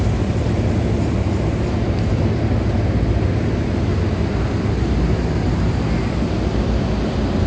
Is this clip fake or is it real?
real